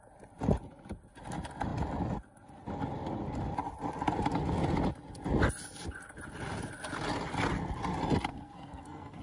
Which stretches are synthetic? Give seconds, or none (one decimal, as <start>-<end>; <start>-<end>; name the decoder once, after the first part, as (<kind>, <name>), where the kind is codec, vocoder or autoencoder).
8.3-9.2 (codec, SNAC)